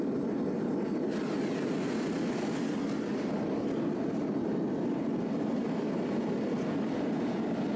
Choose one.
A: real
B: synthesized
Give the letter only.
B